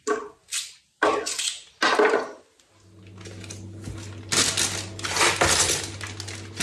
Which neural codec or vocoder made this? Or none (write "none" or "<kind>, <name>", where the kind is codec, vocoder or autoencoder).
none